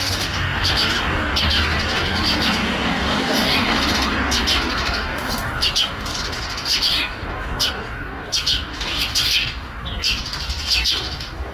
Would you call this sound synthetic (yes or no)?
yes